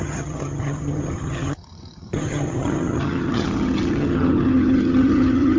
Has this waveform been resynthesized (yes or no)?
yes